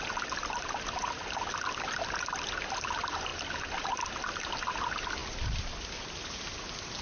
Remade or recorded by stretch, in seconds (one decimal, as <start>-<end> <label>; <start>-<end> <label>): 0.0-7.0 recorded